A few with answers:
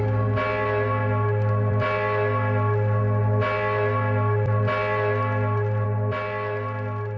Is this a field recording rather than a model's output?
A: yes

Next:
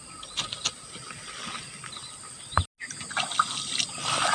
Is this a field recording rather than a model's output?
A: yes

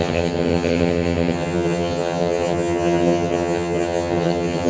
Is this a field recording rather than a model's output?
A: no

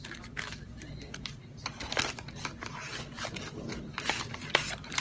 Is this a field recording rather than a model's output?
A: yes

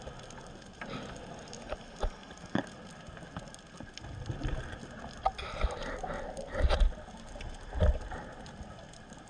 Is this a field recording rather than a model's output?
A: yes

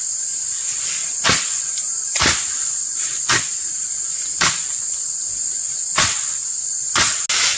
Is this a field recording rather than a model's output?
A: yes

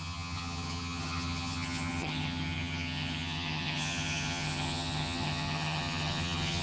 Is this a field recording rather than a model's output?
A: no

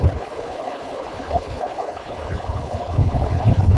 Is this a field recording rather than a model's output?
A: no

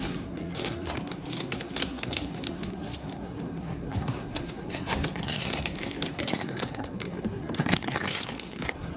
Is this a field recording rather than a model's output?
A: no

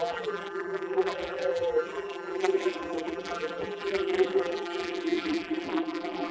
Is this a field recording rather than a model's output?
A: no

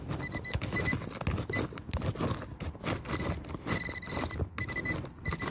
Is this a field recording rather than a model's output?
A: yes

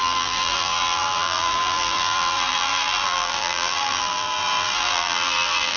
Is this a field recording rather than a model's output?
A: no